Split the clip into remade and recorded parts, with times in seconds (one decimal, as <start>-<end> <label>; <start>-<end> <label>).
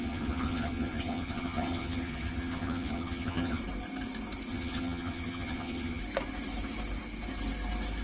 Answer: 0.0-3.6 remade; 3.6-4.5 recorded; 4.5-6.0 remade; 6.0-8.0 recorded